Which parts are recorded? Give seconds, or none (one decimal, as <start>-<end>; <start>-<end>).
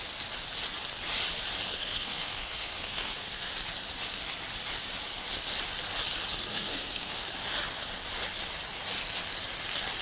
0.0-1.7; 3.5-6.5; 7.2-10.0